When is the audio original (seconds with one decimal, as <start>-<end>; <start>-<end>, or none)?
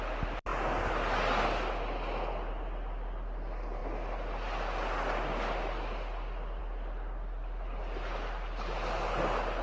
0.0-9.6